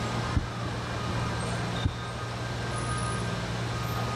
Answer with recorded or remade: recorded